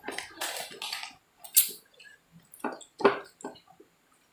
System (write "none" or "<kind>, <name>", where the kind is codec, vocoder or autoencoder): none